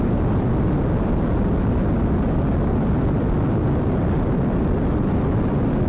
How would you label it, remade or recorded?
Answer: recorded